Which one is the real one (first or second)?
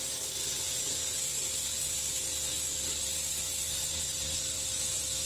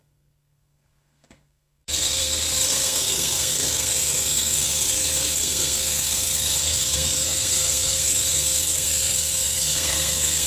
first